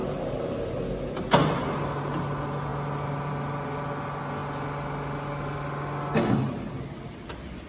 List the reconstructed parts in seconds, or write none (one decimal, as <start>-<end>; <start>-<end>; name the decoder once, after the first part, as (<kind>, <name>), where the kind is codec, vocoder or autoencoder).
none